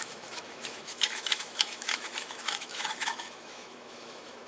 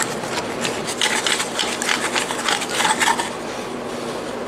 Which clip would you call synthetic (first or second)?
first